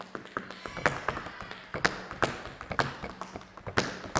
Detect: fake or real real